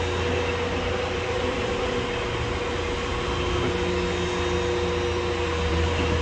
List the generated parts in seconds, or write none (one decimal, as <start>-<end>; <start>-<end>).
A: none